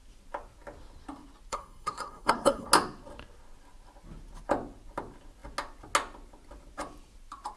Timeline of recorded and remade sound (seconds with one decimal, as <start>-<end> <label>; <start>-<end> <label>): 0.0-1.5 recorded; 1.5-2.7 remade; 2.7-7.6 recorded